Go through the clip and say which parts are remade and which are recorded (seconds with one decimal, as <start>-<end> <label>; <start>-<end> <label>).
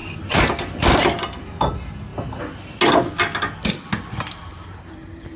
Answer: 0.0-5.4 recorded